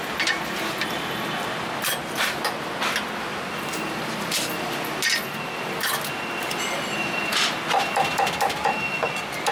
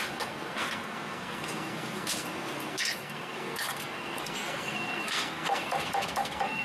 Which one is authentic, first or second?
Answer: first